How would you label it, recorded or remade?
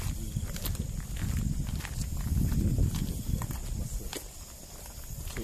recorded